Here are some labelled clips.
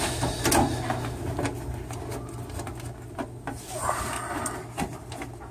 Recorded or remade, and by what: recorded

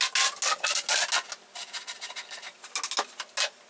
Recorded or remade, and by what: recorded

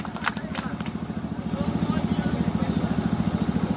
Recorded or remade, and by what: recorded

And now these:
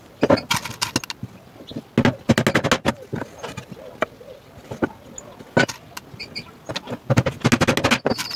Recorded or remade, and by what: recorded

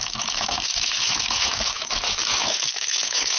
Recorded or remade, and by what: remade, autoencoder, DAC-VAE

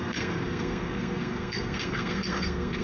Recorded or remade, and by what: remade, codec, SNAC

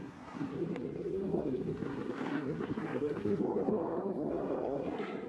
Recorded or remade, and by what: remade, codec, SNAC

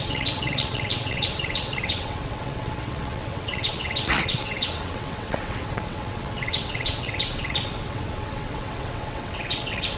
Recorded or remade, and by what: remade, vocoder, WaveNeXt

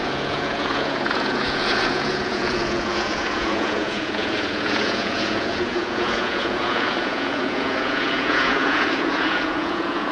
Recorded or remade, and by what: remade, vocoder, Vocos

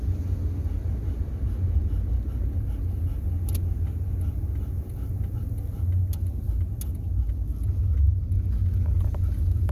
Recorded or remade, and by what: recorded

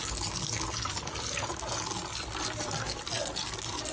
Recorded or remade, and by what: recorded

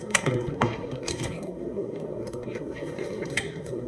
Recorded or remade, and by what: remade, codec, SNAC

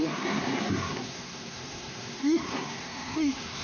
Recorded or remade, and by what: remade, codec, SNAC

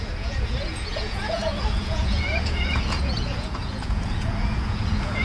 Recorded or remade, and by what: remade, vocoder, Vocos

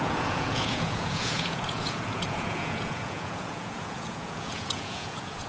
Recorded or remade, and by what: remade, vocoder, Vocos